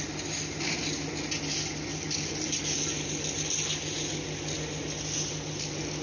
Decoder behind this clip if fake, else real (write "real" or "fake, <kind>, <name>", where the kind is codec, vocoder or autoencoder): real